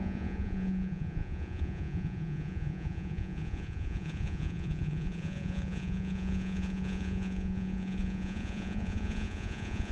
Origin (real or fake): fake